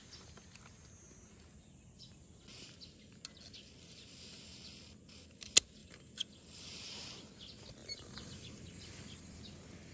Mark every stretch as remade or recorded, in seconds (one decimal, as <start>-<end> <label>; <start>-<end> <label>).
0.0-5.8 recorded; 5.8-6.6 remade; 6.6-7.8 recorded; 7.8-9.4 remade; 9.4-9.9 recorded